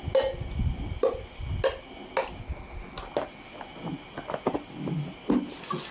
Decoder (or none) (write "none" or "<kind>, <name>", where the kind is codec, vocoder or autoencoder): none